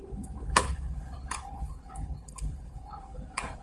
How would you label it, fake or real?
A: fake